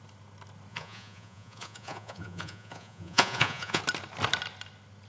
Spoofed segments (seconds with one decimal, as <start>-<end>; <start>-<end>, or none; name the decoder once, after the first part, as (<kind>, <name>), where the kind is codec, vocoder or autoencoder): 0.7-3.8 (vocoder, Vocos)